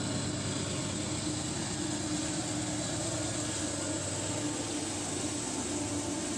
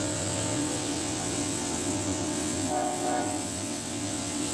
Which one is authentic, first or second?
first